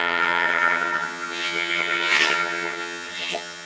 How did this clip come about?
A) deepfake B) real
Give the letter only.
A